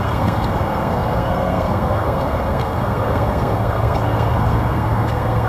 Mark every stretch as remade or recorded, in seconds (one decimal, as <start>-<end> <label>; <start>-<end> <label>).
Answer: 0.0-5.5 remade